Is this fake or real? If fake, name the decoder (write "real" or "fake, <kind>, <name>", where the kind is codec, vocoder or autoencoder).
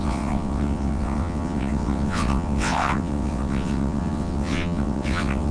fake, vocoder, WaveNeXt